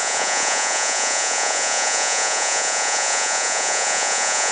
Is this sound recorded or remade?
remade